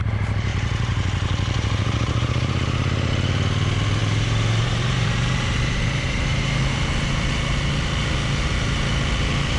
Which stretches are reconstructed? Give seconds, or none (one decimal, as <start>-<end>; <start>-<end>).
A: 0.5-3.1; 4.0-6.6